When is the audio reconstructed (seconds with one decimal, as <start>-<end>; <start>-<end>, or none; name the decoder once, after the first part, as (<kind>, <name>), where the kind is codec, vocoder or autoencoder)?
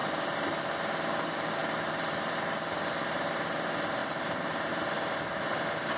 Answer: 0.0-0.6 (vocoder, BigVGAN v2); 4.0-4.7